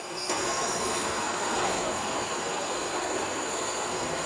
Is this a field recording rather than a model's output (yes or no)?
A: no